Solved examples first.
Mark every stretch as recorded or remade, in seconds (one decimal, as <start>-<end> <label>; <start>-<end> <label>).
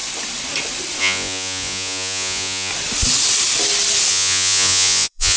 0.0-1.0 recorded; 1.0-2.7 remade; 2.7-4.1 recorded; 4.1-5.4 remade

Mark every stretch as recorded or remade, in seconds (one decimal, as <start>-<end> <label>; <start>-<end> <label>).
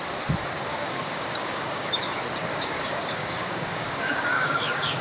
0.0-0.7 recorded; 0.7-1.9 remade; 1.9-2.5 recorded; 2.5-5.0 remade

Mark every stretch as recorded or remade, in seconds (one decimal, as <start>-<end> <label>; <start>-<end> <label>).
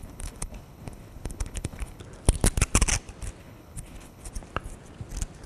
0.0-2.0 remade; 2.0-3.4 recorded; 3.4-4.3 remade; 4.3-5.5 recorded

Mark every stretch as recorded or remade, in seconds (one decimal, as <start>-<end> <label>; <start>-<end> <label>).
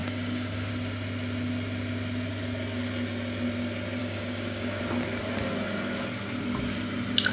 0.0-0.7 remade; 0.7-4.0 recorded; 4.0-4.8 remade; 4.8-7.3 recorded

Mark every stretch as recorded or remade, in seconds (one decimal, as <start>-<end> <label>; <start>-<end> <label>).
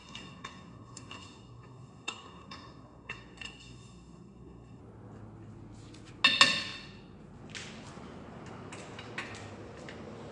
0.0-4.8 remade; 4.8-10.3 recorded